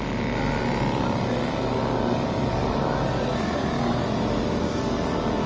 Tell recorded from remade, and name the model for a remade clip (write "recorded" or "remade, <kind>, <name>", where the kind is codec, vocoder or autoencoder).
recorded